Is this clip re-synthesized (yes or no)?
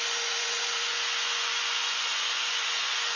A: yes